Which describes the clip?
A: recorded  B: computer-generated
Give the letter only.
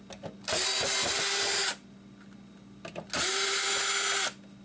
A